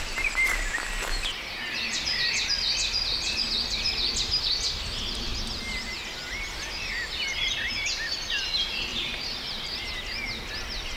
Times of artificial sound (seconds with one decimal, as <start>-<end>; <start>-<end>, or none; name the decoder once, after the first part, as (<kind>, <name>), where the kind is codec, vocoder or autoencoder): 8.9-9.9 (vocoder, BigVGAN v2)